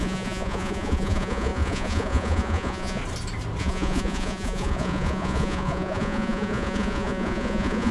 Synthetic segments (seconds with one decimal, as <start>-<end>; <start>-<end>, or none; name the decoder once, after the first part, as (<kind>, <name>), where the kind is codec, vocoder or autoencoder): 0.0-3.0 (vocoder, Vocos); 3.6-7.9